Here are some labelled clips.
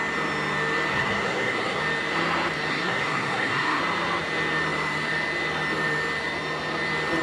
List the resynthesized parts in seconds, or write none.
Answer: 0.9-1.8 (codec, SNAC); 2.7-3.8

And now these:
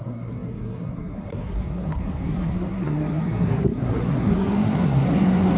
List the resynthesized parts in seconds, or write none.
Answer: 0.0-5.6 (codec, SNAC)

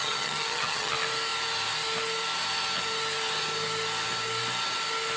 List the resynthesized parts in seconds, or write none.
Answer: 0.0-0.9 (vocoder, HiFi-GAN)

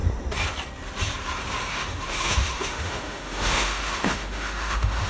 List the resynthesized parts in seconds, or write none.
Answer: 1.7-5.1 (autoencoder, DAC-VAE)

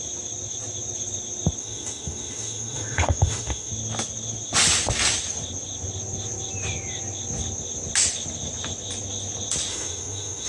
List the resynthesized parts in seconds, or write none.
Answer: 1.6-3.7 (autoencoder, DAC-VAE); 9.7-10.5